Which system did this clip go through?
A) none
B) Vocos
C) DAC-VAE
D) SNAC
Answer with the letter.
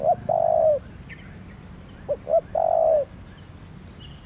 A